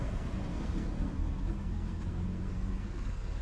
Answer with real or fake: fake